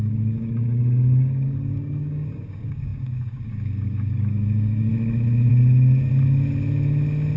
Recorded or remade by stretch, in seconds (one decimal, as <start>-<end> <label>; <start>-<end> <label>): 0.0-4.9 remade; 4.9-5.5 recorded; 5.5-6.1 remade; 6.1-7.4 recorded

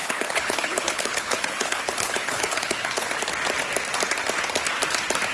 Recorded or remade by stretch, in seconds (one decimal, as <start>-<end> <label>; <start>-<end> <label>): 0.0-3.2 remade; 3.2-5.3 recorded